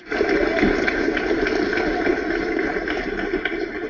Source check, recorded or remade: recorded